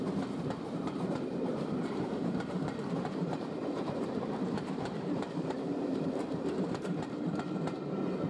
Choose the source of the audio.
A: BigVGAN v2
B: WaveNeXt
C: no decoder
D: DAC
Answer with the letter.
A